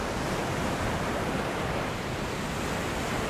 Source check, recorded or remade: recorded